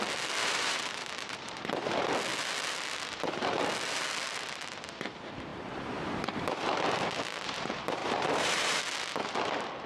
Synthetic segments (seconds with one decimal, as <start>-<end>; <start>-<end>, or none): 0.4-1.6; 8.0-8.8